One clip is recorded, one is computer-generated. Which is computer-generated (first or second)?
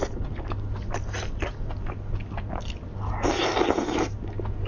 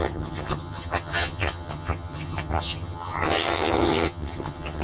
second